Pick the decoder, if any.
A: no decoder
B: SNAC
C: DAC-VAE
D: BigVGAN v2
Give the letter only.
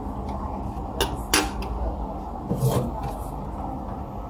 A